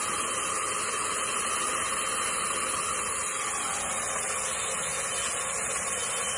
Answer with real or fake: real